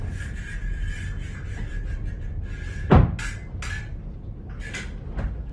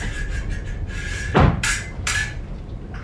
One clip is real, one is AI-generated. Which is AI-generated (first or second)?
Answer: second